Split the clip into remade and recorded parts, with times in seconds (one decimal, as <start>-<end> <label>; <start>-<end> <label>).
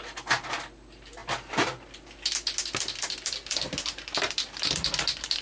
0.0-5.4 recorded